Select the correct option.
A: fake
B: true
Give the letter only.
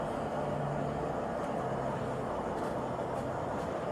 B